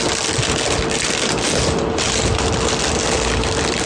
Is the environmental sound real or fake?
real